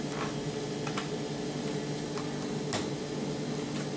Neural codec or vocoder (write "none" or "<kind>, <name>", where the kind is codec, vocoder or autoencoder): none